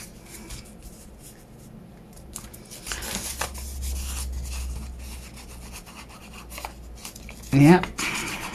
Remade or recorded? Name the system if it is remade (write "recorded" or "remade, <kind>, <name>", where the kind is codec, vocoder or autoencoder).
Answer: recorded